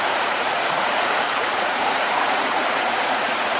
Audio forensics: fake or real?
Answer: fake